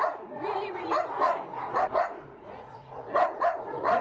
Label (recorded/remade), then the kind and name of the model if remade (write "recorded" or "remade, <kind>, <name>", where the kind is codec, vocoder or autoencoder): remade, vocoder, Vocos